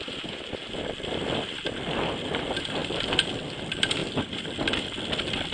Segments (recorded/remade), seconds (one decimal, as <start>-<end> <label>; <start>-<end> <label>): 0.0-5.5 recorded